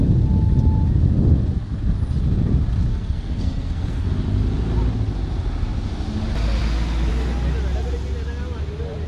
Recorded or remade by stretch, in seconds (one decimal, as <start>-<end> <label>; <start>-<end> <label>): 0.0-2.9 recorded; 2.9-4.1 remade; 4.1-9.1 recorded